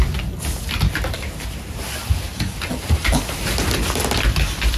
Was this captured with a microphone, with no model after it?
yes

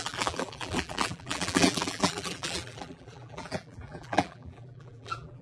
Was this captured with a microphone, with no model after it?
no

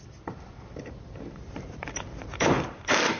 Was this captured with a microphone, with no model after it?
no